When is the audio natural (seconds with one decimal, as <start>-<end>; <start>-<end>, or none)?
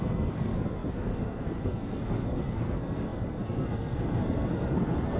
none